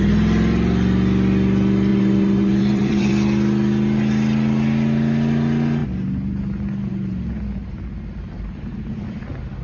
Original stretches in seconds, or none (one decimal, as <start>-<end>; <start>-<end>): 0.0-1.9; 3.1-7.6; 9.0-9.6